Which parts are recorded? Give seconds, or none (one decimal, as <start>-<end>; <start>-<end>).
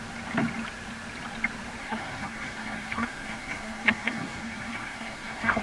0.0-1.8